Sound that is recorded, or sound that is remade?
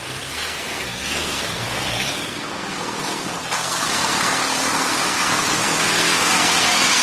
remade